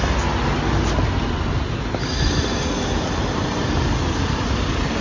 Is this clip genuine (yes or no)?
yes